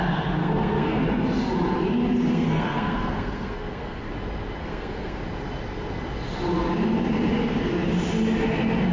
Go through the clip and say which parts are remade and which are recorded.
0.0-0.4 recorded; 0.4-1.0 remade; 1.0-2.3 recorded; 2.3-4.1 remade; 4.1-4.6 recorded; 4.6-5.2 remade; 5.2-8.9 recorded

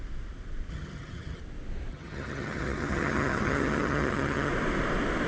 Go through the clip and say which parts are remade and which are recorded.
0.0-0.7 recorded; 0.7-1.4 remade; 1.4-1.9 recorded; 1.9-4.5 remade; 4.5-5.3 recorded

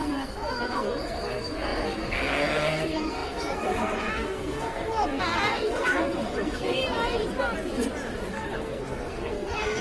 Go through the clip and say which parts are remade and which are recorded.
0.0-6.8 remade; 6.8-8.3 recorded; 8.3-9.8 remade

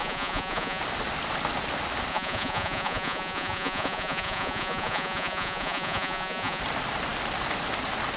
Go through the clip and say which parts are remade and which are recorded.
0.0-0.8 remade; 0.8-2.1 recorded; 2.1-6.6 remade; 6.6-8.2 recorded

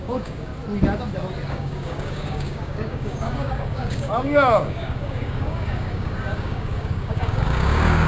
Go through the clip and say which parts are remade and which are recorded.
0.0-0.5 remade; 0.5-1.5 recorded; 1.5-8.1 remade